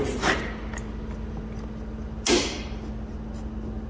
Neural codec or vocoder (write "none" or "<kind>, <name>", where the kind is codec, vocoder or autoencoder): none